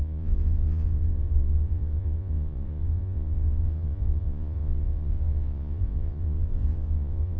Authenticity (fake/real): fake